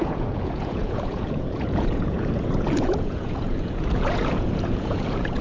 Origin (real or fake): fake